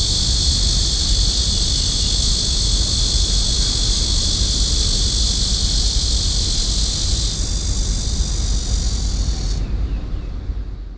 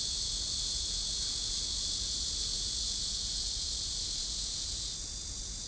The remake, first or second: second